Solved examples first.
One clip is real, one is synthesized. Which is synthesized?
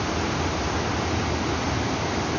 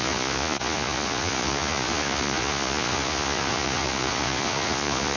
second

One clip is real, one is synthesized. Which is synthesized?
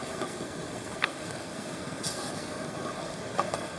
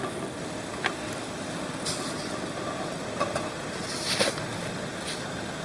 first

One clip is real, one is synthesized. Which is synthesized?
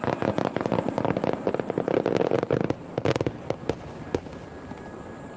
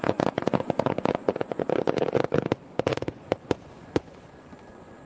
second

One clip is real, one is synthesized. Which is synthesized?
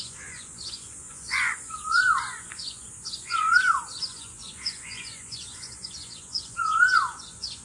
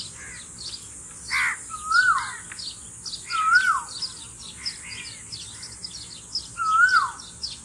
first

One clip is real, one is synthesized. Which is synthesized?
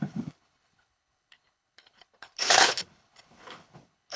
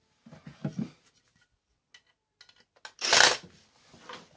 first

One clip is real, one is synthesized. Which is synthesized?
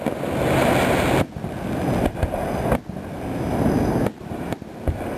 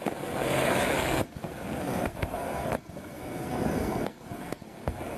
second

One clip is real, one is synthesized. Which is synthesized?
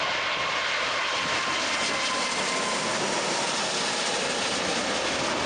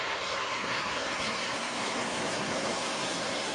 second